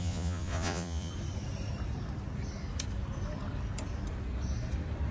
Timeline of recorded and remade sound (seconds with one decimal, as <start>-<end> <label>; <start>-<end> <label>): 0.0-1.1 remade; 1.1-5.1 recorded